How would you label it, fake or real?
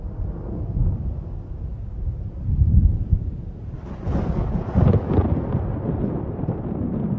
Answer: real